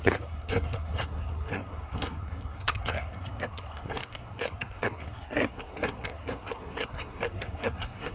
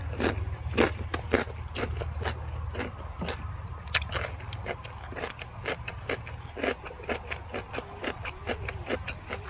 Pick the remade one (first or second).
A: first